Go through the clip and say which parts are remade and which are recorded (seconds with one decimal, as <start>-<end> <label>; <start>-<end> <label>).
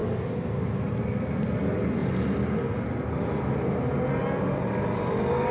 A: 0.0-0.8 remade; 0.8-5.5 recorded